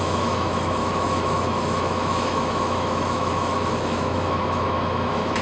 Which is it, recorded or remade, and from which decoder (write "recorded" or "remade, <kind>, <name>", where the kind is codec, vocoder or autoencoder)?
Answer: remade, autoencoder, DAC-VAE